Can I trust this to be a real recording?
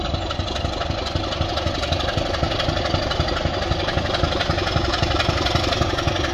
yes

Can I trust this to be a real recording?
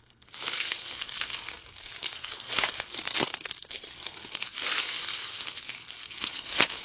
no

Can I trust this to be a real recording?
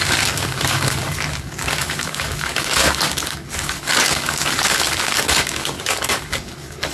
no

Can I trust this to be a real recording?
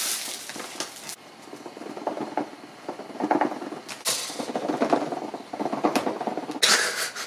yes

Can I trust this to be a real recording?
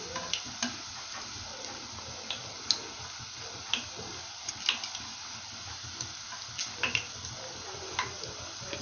yes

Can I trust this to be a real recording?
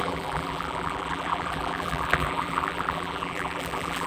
no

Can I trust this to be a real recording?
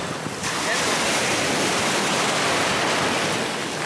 yes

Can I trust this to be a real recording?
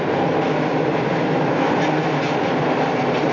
yes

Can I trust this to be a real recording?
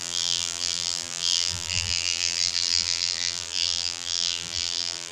no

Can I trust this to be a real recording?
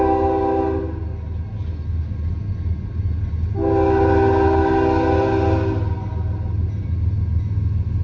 yes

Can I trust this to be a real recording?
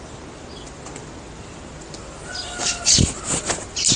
yes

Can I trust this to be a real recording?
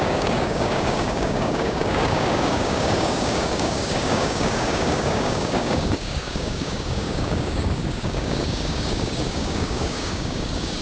no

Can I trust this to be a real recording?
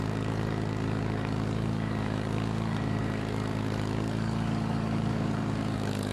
no